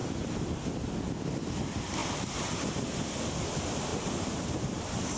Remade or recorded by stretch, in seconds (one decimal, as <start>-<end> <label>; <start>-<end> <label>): 0.0-0.9 remade; 0.9-3.9 recorded; 3.9-5.2 remade